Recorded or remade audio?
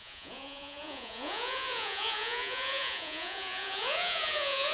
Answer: remade